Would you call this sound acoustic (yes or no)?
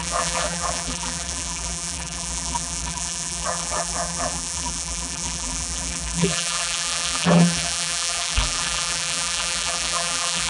no